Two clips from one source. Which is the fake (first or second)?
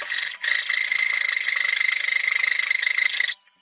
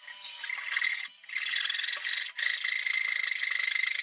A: second